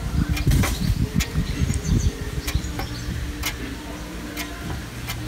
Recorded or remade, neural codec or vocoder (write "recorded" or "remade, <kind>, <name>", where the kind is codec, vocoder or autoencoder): recorded